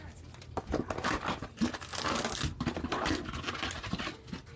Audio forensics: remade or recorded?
recorded